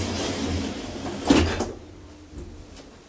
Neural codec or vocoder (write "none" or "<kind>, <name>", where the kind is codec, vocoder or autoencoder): none